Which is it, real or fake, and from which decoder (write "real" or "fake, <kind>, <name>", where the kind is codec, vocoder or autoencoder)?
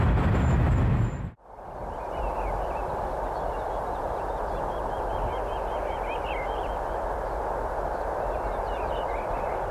fake, vocoder, BigVGAN v2